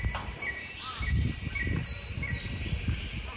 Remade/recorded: recorded